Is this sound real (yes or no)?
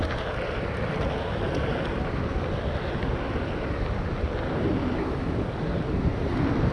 yes